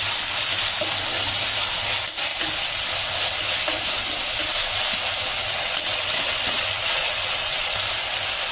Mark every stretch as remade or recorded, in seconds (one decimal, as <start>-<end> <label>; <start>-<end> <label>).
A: 0.0-5.3 recorded; 5.3-7.9 remade; 7.9-8.5 recorded